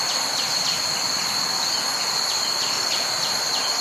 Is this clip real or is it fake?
real